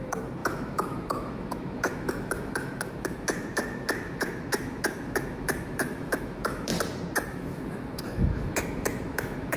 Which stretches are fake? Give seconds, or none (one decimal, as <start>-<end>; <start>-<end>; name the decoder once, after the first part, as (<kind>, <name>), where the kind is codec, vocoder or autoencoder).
0.0-6.7 (autoencoder, DAC-VAE); 7.3-9.6